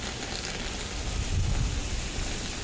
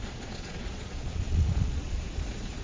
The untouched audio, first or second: first